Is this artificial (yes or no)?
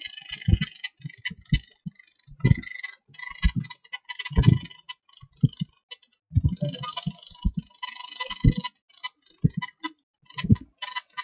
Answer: no